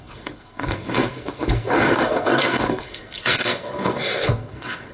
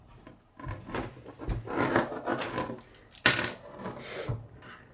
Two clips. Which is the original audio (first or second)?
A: second